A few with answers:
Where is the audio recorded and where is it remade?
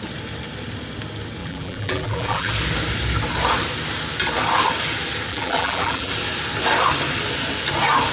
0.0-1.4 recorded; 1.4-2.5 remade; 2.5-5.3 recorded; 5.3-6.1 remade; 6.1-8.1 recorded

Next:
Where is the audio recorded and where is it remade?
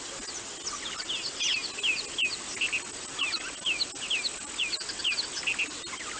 0.0-6.2 recorded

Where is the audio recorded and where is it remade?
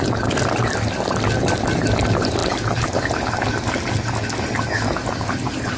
0.0-5.8 recorded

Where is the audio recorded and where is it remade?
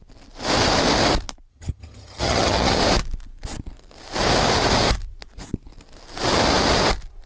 0.0-1.5 recorded; 1.5-2.8 remade; 2.8-7.3 recorded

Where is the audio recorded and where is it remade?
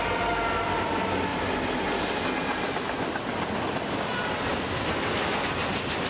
0.0-1.3 recorded; 1.3-2.0 remade; 2.0-6.1 recorded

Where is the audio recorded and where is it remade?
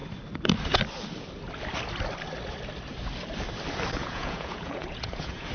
0.0-4.0 recorded; 4.0-5.5 remade